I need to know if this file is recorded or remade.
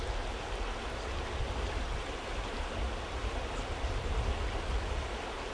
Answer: recorded